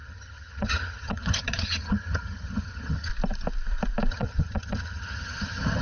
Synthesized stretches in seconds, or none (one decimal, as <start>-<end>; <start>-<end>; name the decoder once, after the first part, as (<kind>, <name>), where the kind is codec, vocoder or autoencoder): 0.0-3.1 (vocoder, HiFi-GAN); 4.1-5.8